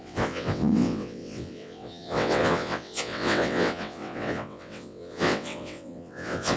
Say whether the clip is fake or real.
fake